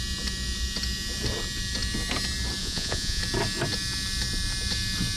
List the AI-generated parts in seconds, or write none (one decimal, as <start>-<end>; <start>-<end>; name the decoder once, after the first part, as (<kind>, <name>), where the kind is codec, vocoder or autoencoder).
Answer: 2.6-3.2 (vocoder, Vocos)